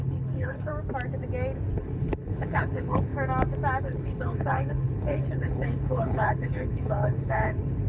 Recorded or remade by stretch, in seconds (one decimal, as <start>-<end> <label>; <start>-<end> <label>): 0.0-0.7 remade; 0.7-1.7 recorded; 1.7-3.1 remade; 3.1-3.8 recorded; 3.8-7.9 remade